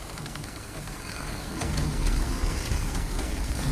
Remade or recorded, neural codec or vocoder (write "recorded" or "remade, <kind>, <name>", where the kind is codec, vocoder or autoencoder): remade, codec, SNAC